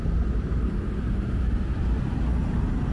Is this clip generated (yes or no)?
no